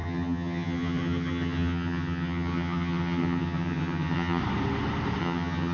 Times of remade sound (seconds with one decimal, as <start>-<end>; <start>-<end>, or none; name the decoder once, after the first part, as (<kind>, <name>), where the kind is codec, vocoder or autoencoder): 0.0-4.4 (vocoder, HiFi-GAN); 5.2-5.7